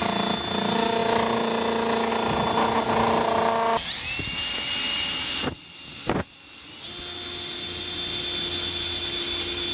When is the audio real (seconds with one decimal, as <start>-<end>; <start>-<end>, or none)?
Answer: 0.0-9.7